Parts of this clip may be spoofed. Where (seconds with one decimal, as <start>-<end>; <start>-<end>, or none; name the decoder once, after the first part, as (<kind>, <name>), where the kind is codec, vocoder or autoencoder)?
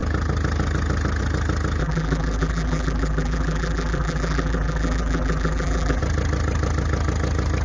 1.8-6.0 (vocoder, BigVGAN v2)